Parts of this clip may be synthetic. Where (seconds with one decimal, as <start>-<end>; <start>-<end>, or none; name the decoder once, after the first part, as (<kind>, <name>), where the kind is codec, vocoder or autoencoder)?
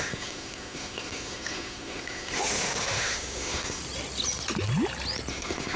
0.0-3.8 (autoencoder, DAC-VAE); 5.3-5.8